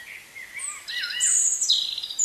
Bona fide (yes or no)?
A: yes